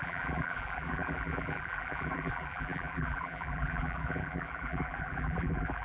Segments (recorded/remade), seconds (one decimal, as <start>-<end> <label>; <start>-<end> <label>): 0.0-5.8 remade